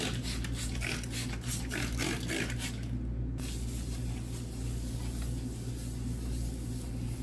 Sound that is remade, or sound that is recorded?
recorded